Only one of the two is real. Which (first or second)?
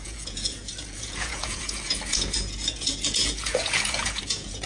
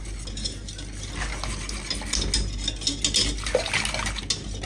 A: second